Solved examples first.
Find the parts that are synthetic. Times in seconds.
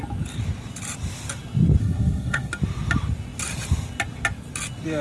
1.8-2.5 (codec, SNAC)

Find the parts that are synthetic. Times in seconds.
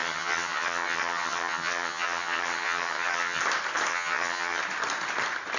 0.0-3.4 (vocoder, HiFi-GAN); 3.9-4.6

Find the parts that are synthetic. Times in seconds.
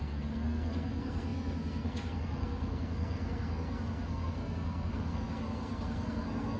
0.0-6.6 (codec, SNAC)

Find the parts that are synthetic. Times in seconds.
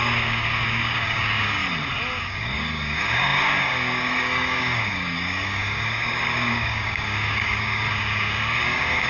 0.0-1.6 (codec, DAC); 2.2-9.1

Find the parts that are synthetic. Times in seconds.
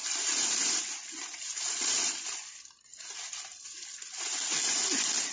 0.0-2.1 (vocoder, BigVGAN v2)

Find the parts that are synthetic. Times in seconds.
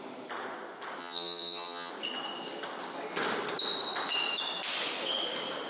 1.0-1.9 (vocoder, HiFi-GAN)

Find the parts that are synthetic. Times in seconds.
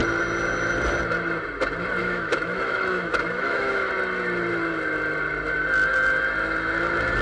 2.0-3.9 (autoencoder, DAC-VAE)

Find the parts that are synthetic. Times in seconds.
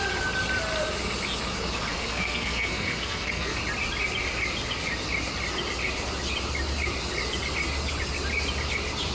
1.9-3.6 (codec, SNAC)